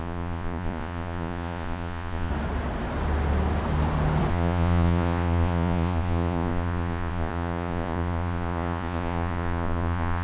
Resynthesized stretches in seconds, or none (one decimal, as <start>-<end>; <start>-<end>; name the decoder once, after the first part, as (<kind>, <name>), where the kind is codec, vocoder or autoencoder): 0.0-2.3 (vocoder, Vocos); 4.3-10.2